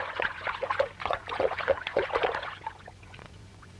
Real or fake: fake